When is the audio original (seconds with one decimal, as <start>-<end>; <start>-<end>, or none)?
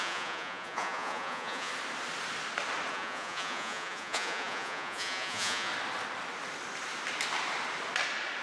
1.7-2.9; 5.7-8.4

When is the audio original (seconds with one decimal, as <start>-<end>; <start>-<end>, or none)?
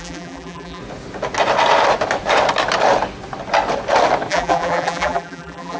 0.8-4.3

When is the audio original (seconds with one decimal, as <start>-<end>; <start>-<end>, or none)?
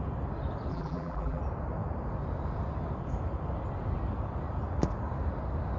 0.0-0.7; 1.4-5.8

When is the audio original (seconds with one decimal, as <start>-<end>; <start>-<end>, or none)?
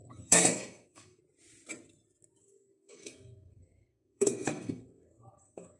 1.2-2.4